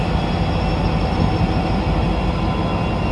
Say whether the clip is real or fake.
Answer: real